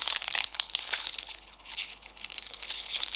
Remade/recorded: remade